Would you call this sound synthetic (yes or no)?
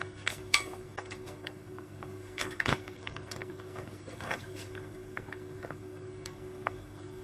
yes